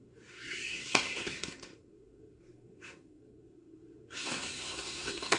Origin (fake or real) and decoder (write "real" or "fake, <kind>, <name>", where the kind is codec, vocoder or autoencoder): fake, codec, SNAC